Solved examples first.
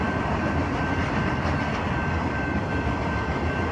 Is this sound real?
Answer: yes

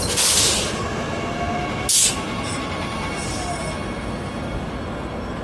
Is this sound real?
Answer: yes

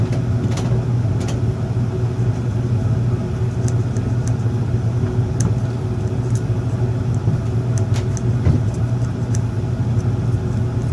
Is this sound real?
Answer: yes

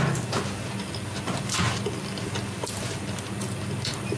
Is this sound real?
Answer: yes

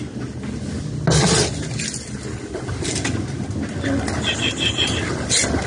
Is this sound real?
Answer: yes